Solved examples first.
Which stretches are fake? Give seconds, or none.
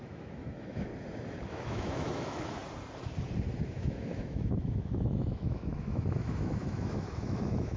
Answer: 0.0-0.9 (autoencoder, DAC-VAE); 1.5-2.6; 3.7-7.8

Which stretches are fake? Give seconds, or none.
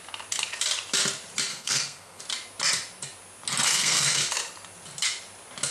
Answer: 1.5-2.2 (codec, SNAC); 3.7-4.2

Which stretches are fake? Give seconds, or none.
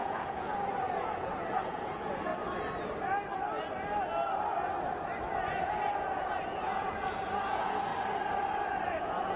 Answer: 0.0-2.3 (vocoder, Vocos); 6.2-7.9; 9.0-9.4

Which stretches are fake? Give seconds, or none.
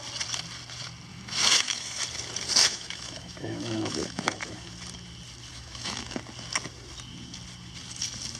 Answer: 1.1-2.0 (autoencoder, DAC-VAE); 2.6-4.7; 5.5-6.2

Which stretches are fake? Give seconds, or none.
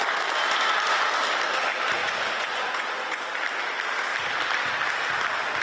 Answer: 2.0-3.2 (vocoder, Vocos)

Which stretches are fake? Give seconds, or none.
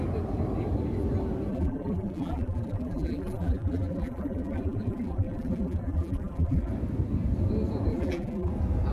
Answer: 1.5-6.7 (vocoder, BigVGAN v2); 7.9-8.5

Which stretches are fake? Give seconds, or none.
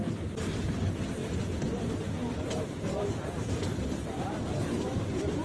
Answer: none